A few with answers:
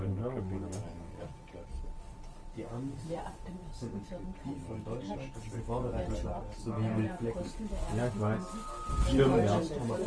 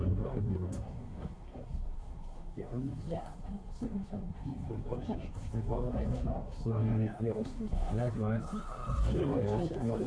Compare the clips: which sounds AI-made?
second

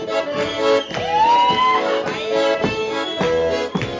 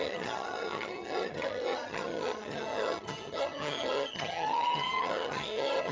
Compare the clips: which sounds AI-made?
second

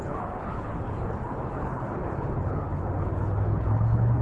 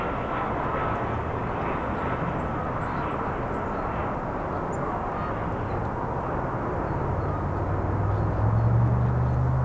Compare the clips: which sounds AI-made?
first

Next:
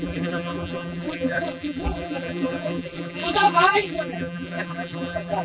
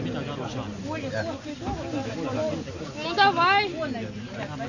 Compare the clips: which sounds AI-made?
first